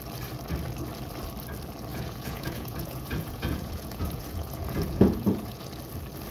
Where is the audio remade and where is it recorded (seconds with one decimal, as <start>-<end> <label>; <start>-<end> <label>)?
0.0-1.9 recorded; 1.9-5.7 remade; 5.7-6.3 recorded